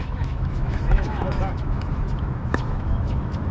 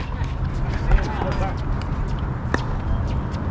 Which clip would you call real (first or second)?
second